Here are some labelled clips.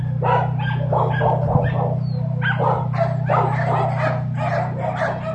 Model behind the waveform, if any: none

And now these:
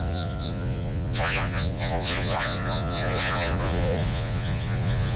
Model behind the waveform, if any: vocoder, Vocos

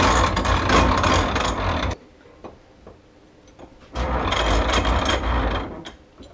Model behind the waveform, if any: none